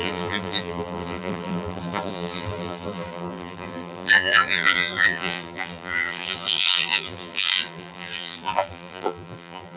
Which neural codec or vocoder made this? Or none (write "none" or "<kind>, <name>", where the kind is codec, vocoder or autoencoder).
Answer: vocoder, BigVGAN v2